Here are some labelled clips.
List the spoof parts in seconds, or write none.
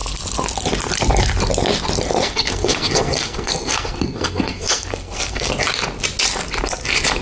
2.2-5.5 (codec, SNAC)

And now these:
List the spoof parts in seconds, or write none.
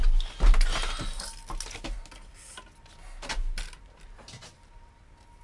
none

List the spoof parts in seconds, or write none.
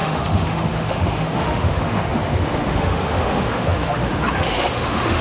0.0-5.2 (autoencoder, DAC-VAE)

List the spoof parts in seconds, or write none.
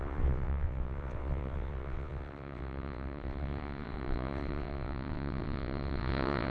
0.0-6.5 (vocoder, WaveNeXt)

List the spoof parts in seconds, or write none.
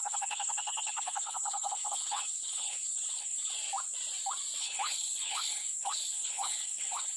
0.0-3.5 (codec, HILCodec); 4.6-7.2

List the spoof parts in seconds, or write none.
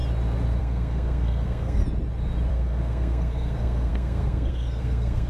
0.6-1.8 (codec, SNAC); 2.5-5.3